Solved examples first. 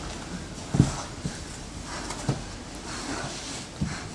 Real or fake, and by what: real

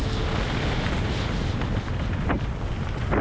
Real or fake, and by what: real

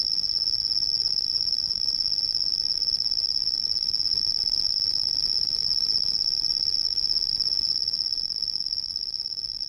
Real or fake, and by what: fake, vocoder, BigVGAN v2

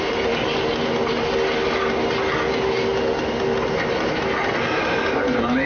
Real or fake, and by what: real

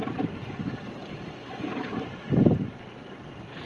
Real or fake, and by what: fake, vocoder, BigVGAN v2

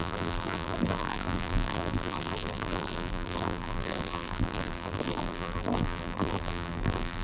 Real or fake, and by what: fake, vocoder, BigVGAN v2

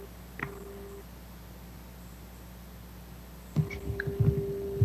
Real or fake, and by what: real